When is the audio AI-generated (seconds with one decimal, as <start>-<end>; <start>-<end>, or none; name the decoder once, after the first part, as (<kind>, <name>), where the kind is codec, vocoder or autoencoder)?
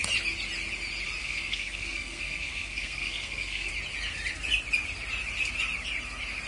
1.2-3.7 (codec, SNAC)